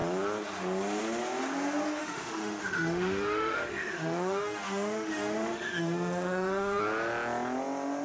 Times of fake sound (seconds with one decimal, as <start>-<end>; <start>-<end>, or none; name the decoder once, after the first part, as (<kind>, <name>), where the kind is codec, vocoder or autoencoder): 2.0-6.8 (autoencoder, DAC-VAE)